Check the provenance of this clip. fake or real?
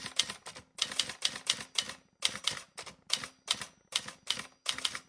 real